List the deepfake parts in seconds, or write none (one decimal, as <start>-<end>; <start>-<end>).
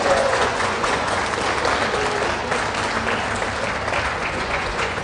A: 0.0-1.2; 4.2-5.0